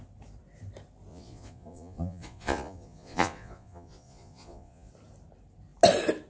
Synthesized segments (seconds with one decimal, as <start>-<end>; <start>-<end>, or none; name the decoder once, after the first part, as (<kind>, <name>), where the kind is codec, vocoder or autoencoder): 1.1-4.9 (vocoder, Vocos)